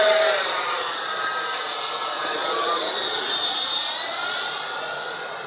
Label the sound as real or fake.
real